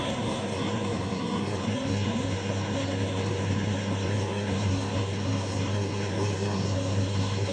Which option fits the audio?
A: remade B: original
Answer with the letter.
A